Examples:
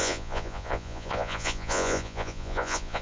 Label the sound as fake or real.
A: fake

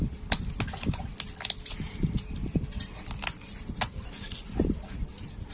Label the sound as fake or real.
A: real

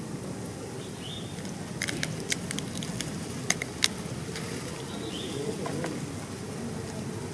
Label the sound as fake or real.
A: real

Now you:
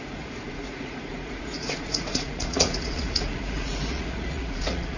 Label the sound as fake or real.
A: fake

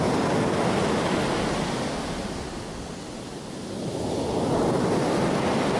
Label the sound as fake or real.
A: real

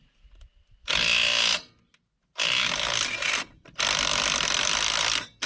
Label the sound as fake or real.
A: real